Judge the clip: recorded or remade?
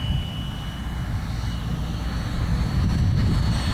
recorded